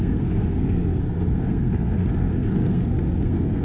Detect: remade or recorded remade